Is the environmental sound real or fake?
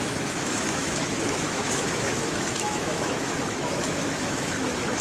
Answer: fake